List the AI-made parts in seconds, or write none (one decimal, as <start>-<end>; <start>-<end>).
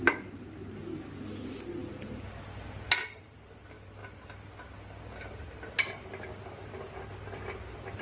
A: none